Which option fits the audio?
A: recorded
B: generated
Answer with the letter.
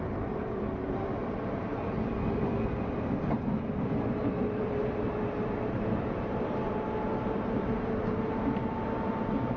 B